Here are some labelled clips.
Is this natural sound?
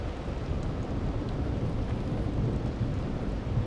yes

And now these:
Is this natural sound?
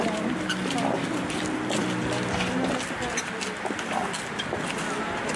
yes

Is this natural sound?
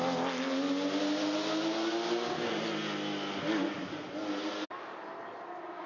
yes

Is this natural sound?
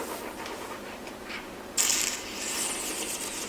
yes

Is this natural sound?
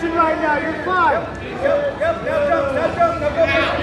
yes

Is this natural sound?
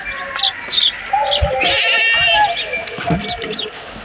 yes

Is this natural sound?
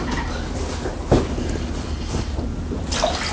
yes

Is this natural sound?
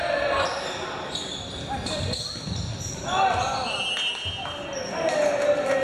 yes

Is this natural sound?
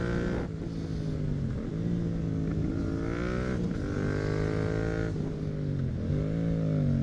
yes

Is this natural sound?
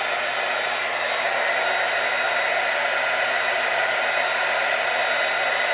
no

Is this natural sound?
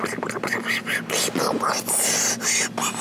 yes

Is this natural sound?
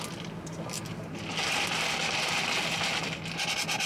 yes